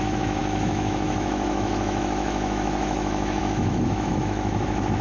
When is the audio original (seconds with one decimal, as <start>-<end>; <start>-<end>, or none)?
none